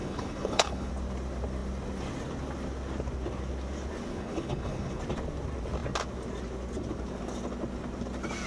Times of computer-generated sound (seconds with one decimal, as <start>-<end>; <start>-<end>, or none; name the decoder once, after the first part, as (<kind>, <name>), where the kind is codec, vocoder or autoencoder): 0.0-0.9 (codec, HILCodec); 4.1-5.0